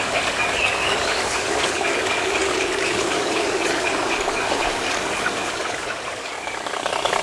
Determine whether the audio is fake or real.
fake